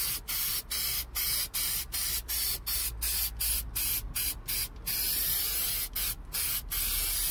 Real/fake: real